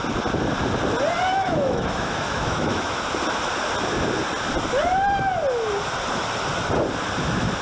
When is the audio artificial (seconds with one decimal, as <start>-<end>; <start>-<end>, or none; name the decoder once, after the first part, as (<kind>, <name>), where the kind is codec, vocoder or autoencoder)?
1.3-3.1 (autoencoder, DAC-VAE)